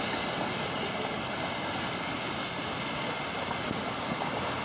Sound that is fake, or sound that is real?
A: real